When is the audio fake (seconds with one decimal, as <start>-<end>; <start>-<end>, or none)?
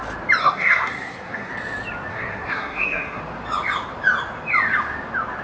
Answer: 0.4-1.5; 2.1-3.2